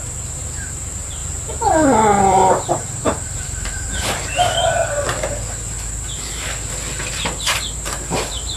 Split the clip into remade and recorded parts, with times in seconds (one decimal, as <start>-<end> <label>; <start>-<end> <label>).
0.0-1.2 remade; 1.2-2.5 recorded; 2.5-5.1 remade; 5.1-7.1 recorded; 7.1-8.6 remade